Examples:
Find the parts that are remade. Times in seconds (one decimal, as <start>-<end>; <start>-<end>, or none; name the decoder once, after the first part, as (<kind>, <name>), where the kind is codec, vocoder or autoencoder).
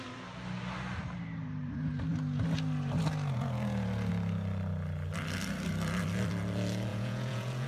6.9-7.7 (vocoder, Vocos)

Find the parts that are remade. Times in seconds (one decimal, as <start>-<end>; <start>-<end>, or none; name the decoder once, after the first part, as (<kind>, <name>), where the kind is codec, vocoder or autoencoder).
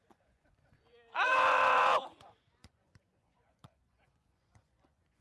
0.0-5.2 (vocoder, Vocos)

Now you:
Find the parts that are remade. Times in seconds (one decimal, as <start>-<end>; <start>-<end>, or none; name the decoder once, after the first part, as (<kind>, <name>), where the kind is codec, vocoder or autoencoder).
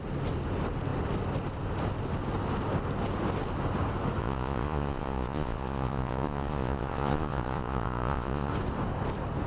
4.2-8.5 (vocoder, Vocos)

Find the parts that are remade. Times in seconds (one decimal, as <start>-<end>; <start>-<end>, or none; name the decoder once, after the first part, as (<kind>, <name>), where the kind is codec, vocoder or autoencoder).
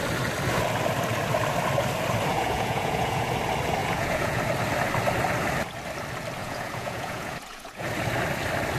2.3-3.3 (vocoder, Vocos); 3.8-4.4; 6.4-7.9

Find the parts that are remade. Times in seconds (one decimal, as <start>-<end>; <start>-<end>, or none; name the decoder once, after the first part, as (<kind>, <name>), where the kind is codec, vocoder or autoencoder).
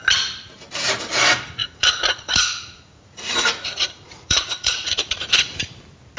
1.6-5.3 (vocoder, Vocos)